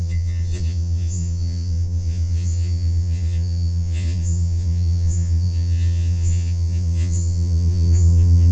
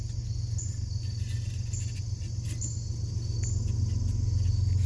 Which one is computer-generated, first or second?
first